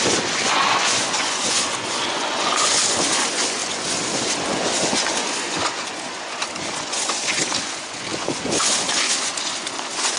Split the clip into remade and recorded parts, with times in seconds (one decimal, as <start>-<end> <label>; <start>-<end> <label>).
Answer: 0.0-10.2 remade